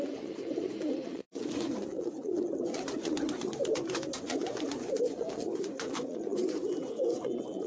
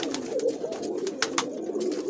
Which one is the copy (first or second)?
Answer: first